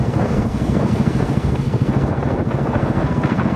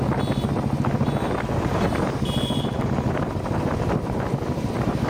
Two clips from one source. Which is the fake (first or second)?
first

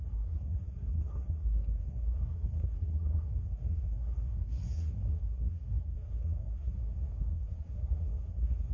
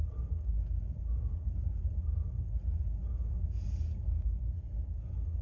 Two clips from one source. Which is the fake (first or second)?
first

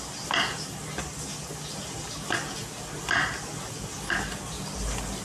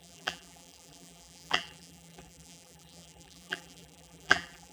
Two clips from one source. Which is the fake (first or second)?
second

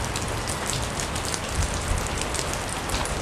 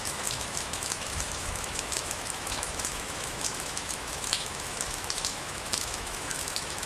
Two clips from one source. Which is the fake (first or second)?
second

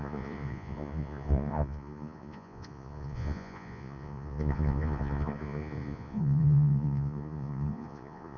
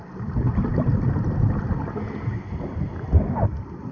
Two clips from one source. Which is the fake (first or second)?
first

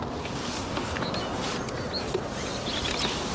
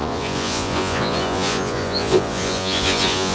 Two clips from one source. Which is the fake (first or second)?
second